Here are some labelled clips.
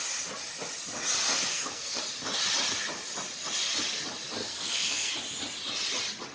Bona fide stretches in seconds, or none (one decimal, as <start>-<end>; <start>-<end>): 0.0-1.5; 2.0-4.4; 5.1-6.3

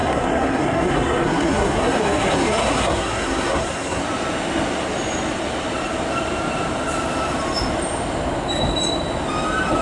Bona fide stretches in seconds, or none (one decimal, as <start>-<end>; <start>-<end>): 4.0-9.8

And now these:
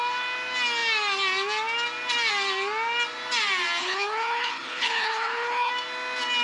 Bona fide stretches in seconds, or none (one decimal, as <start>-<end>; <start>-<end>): 0.0-3.8; 5.7-6.4

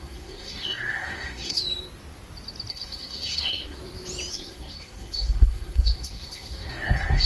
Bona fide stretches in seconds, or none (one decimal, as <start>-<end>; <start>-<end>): 1.6-2.7; 3.8-4.3

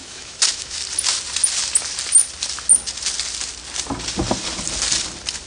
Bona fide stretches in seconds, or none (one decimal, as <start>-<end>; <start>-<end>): 0.8-5.5

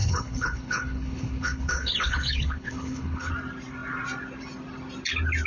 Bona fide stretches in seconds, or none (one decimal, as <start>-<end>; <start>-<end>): 3.3-5.5